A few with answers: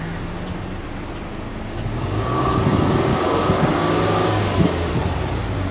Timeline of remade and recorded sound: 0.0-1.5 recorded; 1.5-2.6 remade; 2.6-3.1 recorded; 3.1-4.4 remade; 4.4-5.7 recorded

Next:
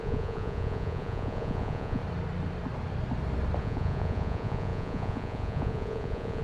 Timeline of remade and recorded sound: 0.0-2.0 remade; 2.0-3.6 recorded; 3.6-6.4 remade

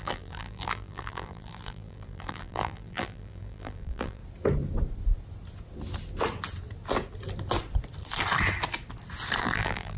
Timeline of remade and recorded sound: 0.0-4.2 remade; 4.2-9.4 recorded; 9.4-10.0 remade

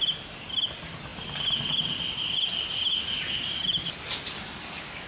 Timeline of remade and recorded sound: 0.0-5.1 recorded

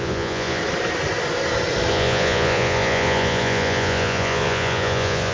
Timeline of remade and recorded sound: 0.0-0.6 remade; 0.6-1.9 recorded; 1.9-5.3 remade

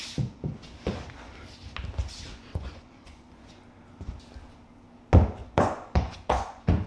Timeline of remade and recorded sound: 0.0-2.3 recorded; 2.3-3.6 remade; 3.6-5.4 recorded; 5.4-6.9 remade

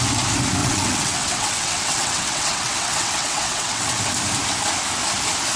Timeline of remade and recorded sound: 0.0-0.6 recorded; 0.6-4.0 remade; 4.0-5.6 recorded